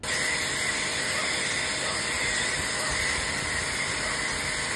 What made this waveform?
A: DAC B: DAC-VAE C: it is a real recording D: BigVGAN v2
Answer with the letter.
C